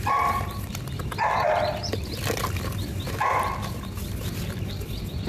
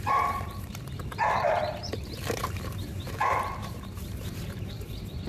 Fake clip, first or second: second